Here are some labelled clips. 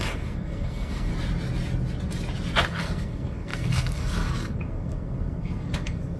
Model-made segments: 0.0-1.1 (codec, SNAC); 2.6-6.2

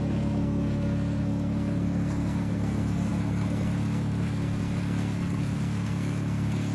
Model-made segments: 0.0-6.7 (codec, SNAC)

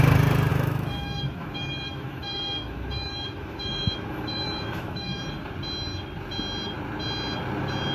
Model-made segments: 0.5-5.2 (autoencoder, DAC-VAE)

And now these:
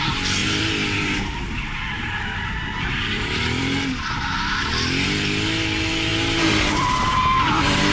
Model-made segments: 0.4-4.0 (vocoder, BigVGAN v2)

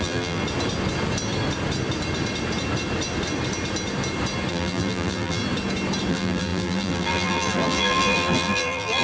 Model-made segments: 0.0-0.4 (vocoder, BigVGAN v2); 4.5-5.4; 6.1-9.0

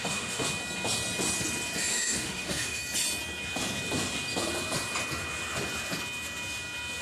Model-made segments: 0.0-0.4 (autoencoder, DAC-VAE); 1.9-2.8

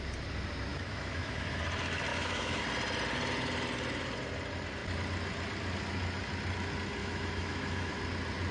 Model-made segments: 0.7-1.6 (autoencoder, DAC-VAE); 2.1-2.6; 7.0-8.0

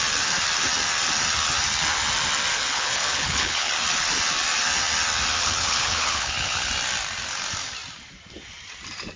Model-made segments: 2.5-3.7 (codec, HILCodec); 5.4-6.7